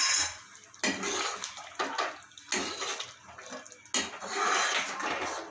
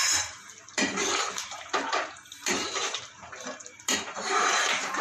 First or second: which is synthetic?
second